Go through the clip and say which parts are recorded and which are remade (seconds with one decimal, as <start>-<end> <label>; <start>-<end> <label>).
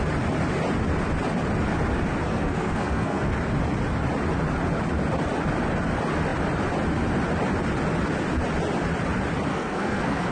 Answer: 0.0-2.3 recorded; 2.3-3.3 remade; 3.3-9.5 recorded; 9.5-10.3 remade